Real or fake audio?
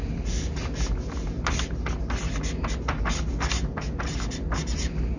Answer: real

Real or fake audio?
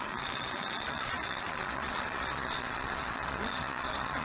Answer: fake